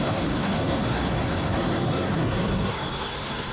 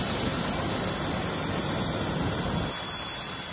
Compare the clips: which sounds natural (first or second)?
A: second